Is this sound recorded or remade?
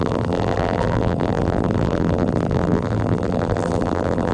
remade